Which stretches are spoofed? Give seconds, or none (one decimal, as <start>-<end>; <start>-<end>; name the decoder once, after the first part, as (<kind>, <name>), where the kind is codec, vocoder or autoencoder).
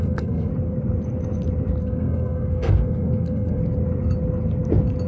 0.0-0.5 (codec, SNAC); 1.8-3.6